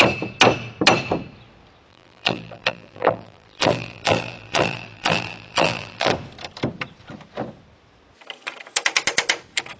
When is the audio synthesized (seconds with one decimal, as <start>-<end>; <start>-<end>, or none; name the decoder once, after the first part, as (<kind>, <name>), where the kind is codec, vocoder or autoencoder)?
1.9-6.1 (vocoder, BigVGAN v2)